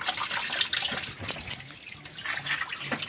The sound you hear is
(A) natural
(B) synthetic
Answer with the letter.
A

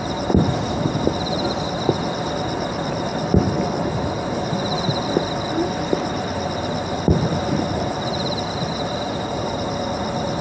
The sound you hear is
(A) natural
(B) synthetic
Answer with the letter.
A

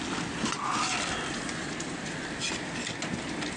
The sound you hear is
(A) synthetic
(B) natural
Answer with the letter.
B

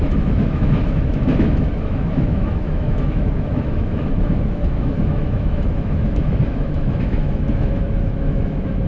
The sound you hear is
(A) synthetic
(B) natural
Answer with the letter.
A